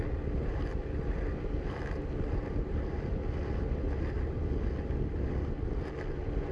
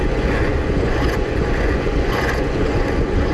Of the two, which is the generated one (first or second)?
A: second